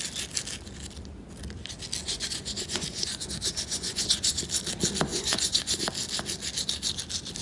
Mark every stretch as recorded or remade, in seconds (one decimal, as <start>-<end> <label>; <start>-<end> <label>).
0.0-2.0 recorded; 2.0-4.4 remade; 4.4-5.1 recorded; 5.1-5.8 remade; 5.8-7.4 recorded